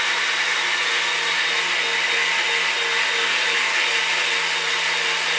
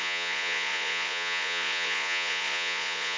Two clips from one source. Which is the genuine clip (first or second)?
first